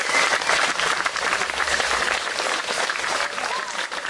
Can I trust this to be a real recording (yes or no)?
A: no